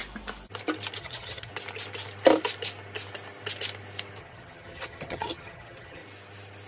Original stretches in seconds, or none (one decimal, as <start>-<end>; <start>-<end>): 0.0-1.0; 1.5-4.2; 6.0-6.7